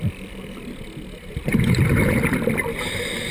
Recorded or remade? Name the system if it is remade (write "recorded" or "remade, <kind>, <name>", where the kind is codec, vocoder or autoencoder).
recorded